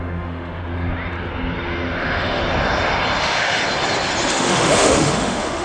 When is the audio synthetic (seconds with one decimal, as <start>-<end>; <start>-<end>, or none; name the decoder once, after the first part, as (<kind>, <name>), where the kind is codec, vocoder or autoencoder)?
0.0-0.6 (autoencoder, DAC-VAE); 2.0-2.4; 3.2-3.6; 4.3-5.6

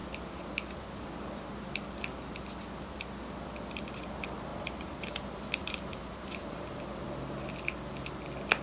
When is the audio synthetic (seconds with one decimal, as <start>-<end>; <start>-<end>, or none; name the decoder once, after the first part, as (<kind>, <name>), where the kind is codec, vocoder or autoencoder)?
4.5-6.8 (vocoder, BigVGAN v2)

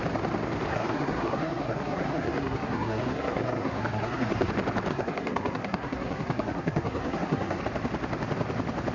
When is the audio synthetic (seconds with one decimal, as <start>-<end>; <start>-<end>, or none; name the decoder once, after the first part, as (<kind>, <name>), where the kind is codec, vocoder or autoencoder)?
0.7-4.5 (codec, SNAC); 4.9-7.6

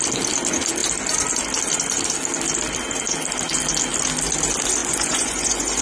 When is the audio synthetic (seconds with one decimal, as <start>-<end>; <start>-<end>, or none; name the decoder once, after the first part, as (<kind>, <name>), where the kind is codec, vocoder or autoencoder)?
4.8-5.8 (vocoder, Vocos)

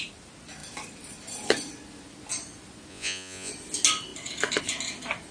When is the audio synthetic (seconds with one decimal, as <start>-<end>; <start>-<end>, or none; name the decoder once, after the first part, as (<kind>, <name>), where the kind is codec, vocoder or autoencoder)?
2.9-3.5 (vocoder, Vocos)